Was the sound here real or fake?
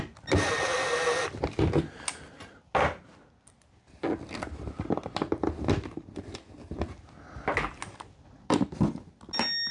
real